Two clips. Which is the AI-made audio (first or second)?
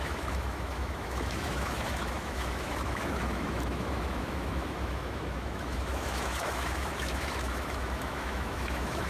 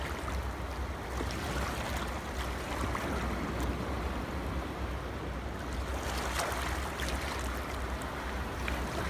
first